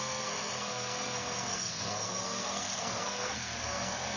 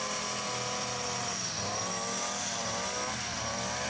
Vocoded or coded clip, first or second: first